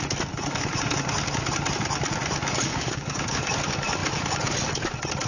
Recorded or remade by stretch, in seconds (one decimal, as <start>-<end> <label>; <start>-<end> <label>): 0.0-2.7 recorded; 2.7-3.5 remade; 3.5-5.3 recorded

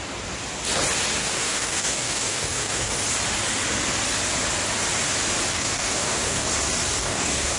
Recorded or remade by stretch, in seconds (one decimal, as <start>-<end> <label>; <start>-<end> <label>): 0.0-1.2 recorded; 1.2-2.9 remade; 2.9-5.5 recorded; 5.5-6.5 remade; 6.5-7.0 recorded; 7.0-7.6 remade

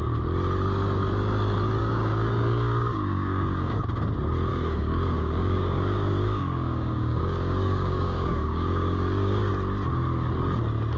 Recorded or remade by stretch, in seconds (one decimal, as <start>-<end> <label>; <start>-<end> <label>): 0.0-1.8 recorded; 1.8-3.8 remade; 3.8-4.5 recorded; 4.5-9.5 remade; 9.5-11.0 recorded

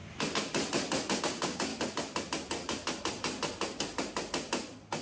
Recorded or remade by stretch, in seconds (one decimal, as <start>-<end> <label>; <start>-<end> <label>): 0.0-1.2 recorded; 1.2-1.7 remade; 1.7-5.0 recorded